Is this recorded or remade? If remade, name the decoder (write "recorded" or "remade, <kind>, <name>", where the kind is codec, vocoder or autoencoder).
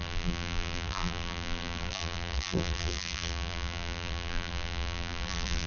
remade, vocoder, BigVGAN v2